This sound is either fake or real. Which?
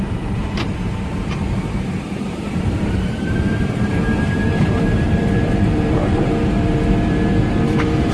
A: fake